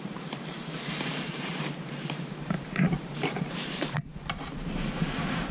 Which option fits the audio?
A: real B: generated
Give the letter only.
B